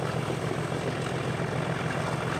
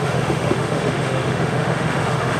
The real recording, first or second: first